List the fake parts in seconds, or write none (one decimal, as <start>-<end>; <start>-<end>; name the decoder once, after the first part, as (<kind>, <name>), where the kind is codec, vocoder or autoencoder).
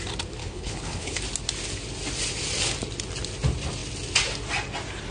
0.4-1.2 (codec, HILCodec)